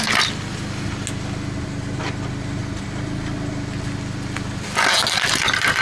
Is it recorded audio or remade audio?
recorded